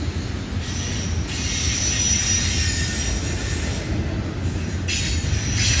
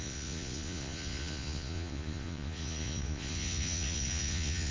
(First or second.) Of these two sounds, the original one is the first